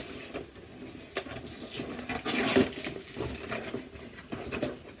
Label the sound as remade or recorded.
recorded